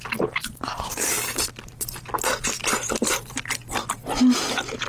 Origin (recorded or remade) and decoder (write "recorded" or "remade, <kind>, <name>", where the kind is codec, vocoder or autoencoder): recorded